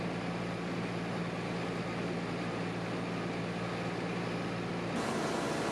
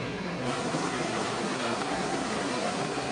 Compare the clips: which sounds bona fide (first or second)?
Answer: first